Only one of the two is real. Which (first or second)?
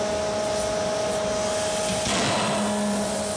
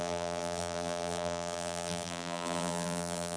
first